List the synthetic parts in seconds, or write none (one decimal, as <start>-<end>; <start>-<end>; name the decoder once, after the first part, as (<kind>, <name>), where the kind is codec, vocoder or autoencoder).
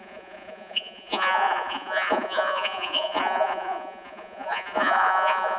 0.0-5.6 (vocoder, Vocos)